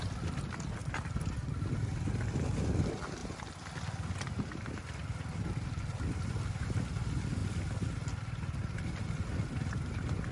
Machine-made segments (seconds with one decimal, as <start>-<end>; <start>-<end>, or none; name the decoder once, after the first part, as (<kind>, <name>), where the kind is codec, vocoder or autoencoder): none